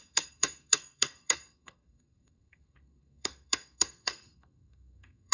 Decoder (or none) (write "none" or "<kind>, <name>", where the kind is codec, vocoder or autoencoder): codec, SNAC